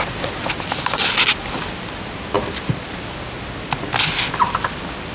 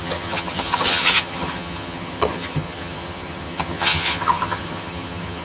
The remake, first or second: second